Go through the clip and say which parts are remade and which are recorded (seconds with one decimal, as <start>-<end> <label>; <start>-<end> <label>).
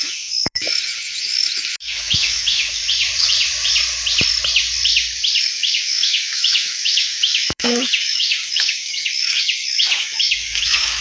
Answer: 0.0-2.8 remade; 2.8-5.4 recorded; 5.4-11.0 remade